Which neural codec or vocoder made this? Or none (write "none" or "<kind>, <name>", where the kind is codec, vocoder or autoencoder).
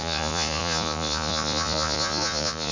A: vocoder, Vocos